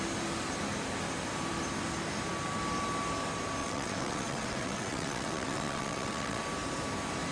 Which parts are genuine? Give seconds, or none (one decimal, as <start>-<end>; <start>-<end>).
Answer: 0.0-3.6; 6.4-7.3